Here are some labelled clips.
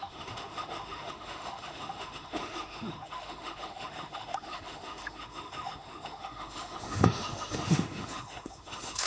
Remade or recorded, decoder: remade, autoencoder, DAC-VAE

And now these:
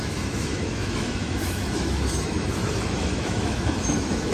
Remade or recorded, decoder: remade, autoencoder, DAC-VAE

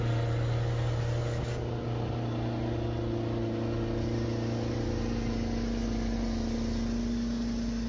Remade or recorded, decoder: recorded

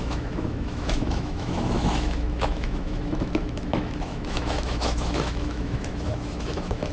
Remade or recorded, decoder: remade, autoencoder, DAC-VAE